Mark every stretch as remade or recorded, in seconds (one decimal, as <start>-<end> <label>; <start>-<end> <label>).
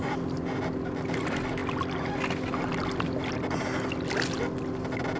0.0-5.2 recorded